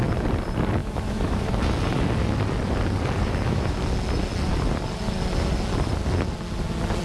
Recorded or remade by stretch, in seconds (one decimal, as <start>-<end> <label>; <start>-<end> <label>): 0.0-0.8 recorded; 0.8-1.5 remade; 1.5-3.2 recorded; 3.2-3.8 remade; 3.8-7.0 recorded